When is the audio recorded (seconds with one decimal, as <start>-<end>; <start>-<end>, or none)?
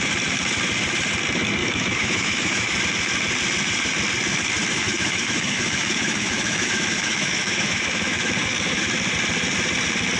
0.0-1.6; 2.8-4.7; 8.8-10.2